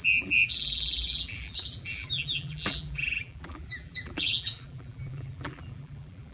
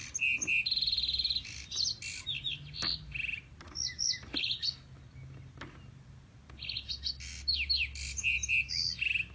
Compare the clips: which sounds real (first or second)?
second